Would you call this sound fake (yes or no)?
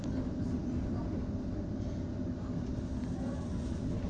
no